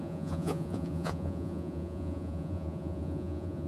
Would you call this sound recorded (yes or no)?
no